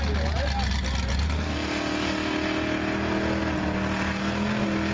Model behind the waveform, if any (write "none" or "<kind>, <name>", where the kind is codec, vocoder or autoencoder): none